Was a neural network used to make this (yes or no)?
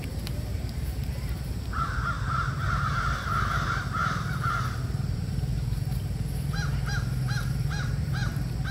yes